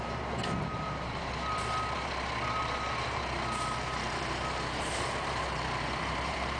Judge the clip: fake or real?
fake